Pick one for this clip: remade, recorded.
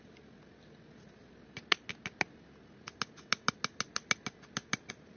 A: recorded